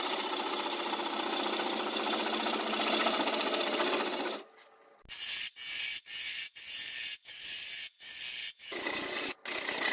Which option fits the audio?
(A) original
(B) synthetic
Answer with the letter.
A